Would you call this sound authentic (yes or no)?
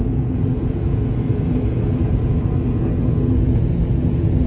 no